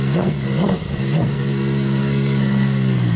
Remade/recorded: remade